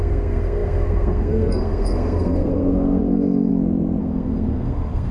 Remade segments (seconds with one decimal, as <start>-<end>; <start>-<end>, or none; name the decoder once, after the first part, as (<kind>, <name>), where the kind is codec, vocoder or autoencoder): 0.0-3.5 (codec, SNAC); 4.0-5.1